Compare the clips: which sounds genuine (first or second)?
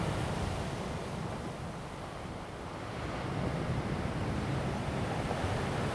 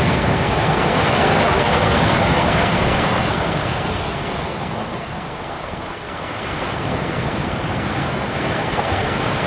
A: first